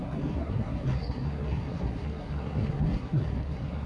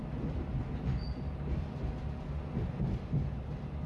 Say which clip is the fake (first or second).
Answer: first